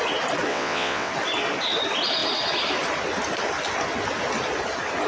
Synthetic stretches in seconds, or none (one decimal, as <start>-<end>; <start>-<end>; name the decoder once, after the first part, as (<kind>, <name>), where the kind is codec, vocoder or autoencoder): 0.5-1.1 (vocoder, WaveNeXt)